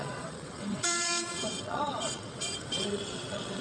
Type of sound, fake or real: fake